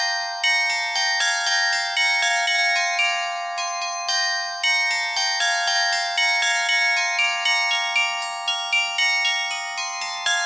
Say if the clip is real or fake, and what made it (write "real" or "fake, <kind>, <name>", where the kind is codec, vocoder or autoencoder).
real